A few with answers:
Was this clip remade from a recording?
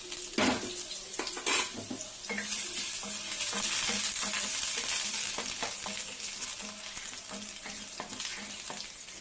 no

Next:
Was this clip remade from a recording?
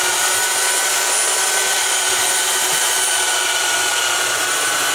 no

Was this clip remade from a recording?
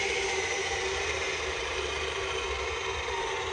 yes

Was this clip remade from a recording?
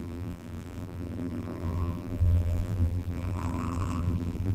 yes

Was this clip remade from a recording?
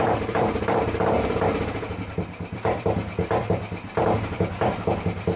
yes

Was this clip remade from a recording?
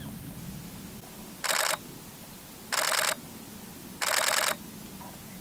no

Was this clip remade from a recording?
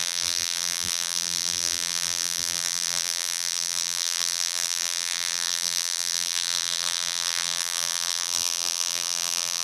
yes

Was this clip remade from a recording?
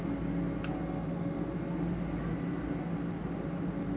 no